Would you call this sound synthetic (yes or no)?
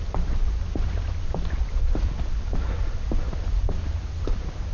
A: no